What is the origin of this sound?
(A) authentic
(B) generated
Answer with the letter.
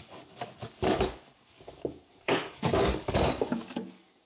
B